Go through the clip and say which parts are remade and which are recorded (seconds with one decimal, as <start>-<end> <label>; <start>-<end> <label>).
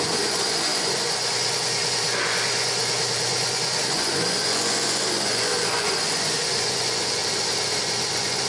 0.0-7.2 remade; 7.2-7.8 recorded; 7.8-8.5 remade